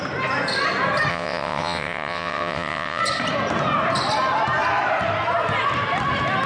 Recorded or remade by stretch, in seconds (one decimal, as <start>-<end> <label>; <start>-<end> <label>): 0.0-1.1 recorded; 1.1-3.0 remade; 3.0-6.5 recorded

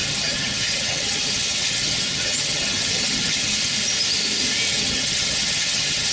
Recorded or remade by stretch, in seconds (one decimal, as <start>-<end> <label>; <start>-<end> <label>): 0.0-3.7 remade; 3.7-4.7 recorded; 4.7-6.1 remade

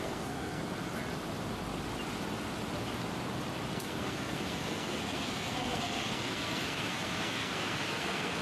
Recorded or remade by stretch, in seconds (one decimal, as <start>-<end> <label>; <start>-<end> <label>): 0.0-0.6 remade; 0.6-3.7 recorded; 3.7-8.4 remade

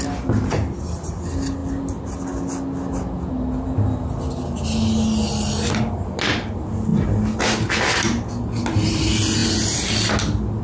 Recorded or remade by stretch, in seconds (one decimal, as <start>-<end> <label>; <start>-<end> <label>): 0.0-10.6 recorded

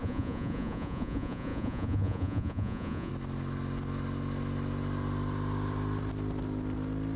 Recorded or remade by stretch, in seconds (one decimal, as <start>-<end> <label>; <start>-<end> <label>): 0.0-3.1 remade; 3.1-7.2 recorded

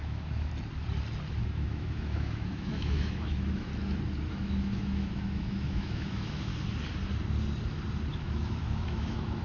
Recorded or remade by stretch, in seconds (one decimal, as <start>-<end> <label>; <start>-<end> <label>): 0.0-0.5 remade; 0.5-1.4 recorded; 1.4-3.7 remade; 3.7-4.3 recorded; 4.3-6.5 remade; 6.5-8.1 recorded; 8.1-9.4 remade

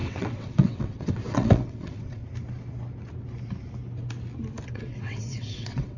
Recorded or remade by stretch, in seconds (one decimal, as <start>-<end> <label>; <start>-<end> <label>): 0.0-2.2 remade; 2.2-4.7 recorded; 4.7-6.0 remade

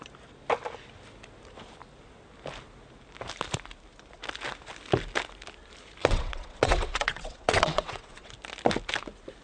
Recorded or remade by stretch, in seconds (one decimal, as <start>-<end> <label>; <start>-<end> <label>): 0.0-6.0 recorded; 6.0-8.3 remade; 8.3-9.4 recorded